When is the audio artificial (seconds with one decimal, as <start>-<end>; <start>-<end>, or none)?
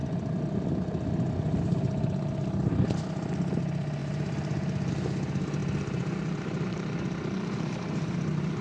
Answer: 4.0-4.9; 5.6-8.6